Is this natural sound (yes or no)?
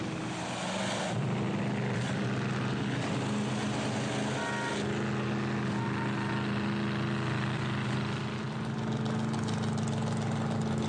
yes